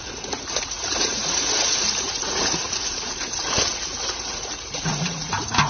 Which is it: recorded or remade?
remade